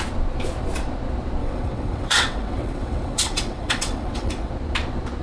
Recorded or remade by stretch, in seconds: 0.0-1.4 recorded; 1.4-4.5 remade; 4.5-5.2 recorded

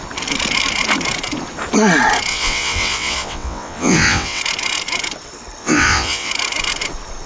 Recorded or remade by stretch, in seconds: 0.0-2.3 recorded; 2.3-4.4 remade; 4.4-5.6 recorded; 5.6-6.3 remade; 6.3-7.3 recorded

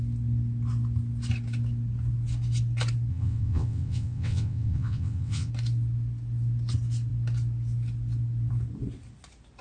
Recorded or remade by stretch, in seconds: 0.0-3.1 recorded; 3.1-5.5 remade; 5.5-9.6 recorded

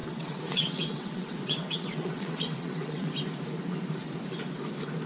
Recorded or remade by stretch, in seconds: 0.0-3.1 remade; 3.1-5.1 recorded

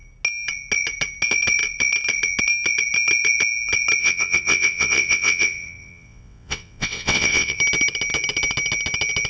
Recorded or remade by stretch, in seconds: 0.0-4.0 recorded; 4.0-7.6 remade; 7.6-9.3 recorded

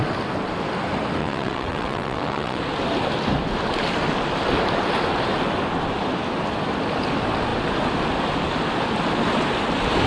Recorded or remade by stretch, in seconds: 0.0-1.2 recorded; 1.2-2.6 remade; 2.6-10.1 recorded

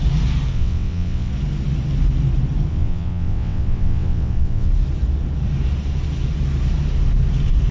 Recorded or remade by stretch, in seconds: 0.0-0.5 recorded; 0.5-1.3 remade; 1.3-2.7 recorded; 2.7-4.7 remade; 4.7-7.7 recorded